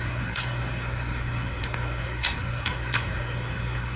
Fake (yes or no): yes